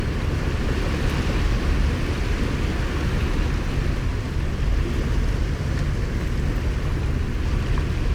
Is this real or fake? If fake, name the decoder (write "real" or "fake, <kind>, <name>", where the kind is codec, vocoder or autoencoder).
real